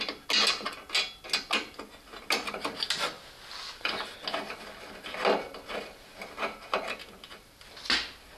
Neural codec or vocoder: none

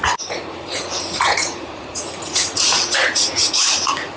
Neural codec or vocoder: vocoder, Vocos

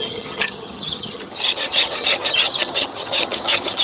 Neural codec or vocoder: vocoder, HiFi-GAN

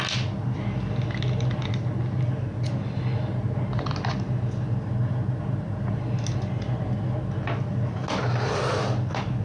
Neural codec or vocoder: none